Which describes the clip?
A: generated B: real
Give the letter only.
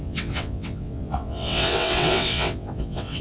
A